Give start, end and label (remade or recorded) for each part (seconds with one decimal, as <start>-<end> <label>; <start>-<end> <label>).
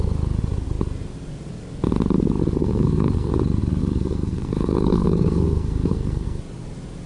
0.0-2.6 recorded; 2.6-3.3 remade; 3.3-3.8 recorded; 3.8-6.4 remade; 6.4-7.1 recorded